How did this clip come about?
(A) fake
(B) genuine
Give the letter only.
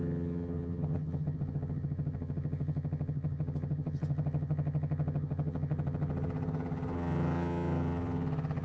A